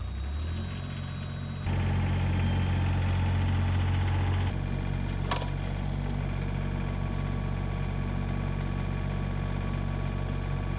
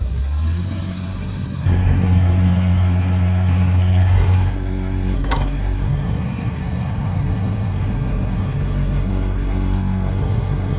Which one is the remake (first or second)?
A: second